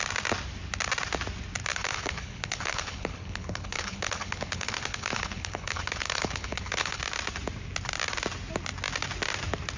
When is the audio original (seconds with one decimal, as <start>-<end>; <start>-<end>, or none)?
0.0-1.7; 7.0-9.8

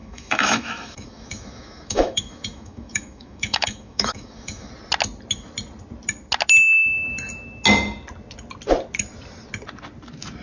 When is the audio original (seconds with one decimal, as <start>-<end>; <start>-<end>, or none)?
4.7-10.4

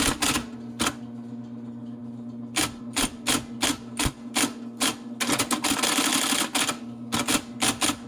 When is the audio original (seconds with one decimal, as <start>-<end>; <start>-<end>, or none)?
0.0-8.1

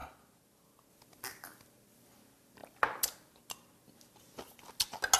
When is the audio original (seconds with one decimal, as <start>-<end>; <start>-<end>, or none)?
0.0-5.2

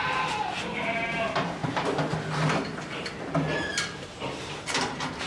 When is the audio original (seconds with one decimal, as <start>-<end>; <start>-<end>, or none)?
0.0-1.6; 3.1-3.7